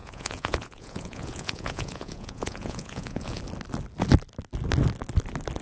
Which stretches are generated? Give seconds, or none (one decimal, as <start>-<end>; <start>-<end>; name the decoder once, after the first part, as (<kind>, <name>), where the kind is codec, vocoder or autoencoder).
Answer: 0.0-3.4 (vocoder, Vocos)